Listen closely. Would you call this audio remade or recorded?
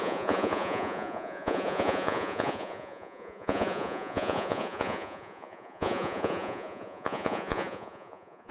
remade